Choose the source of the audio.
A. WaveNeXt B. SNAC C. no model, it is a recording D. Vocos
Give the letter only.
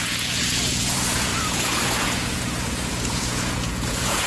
D